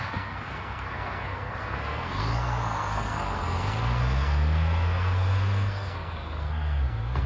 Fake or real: fake